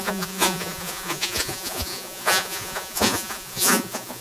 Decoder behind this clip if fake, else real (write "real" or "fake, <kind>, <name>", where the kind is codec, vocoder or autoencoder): fake, vocoder, Vocos